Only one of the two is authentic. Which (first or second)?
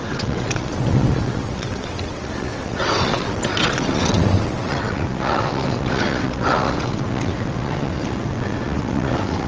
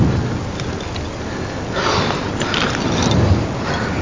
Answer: second